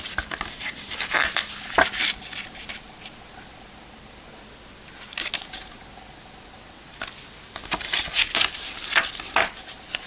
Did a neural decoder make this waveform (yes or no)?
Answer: no